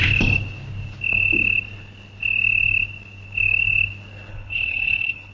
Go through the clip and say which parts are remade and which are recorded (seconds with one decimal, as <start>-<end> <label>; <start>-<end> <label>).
0.0-4.3 recorded; 4.3-5.3 remade